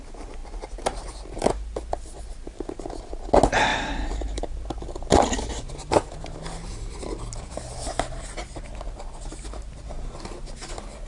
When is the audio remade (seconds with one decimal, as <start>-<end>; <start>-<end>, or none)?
3.7-4.4